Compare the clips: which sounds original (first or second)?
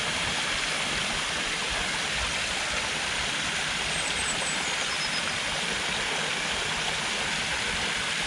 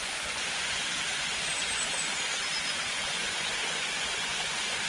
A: first